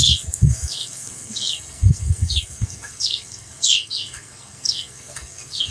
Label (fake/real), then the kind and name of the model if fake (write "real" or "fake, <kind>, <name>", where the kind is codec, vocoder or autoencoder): fake, codec, SNAC